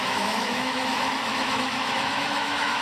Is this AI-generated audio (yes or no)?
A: yes